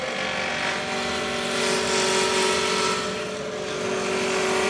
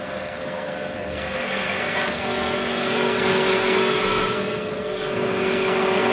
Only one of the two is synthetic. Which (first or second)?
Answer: second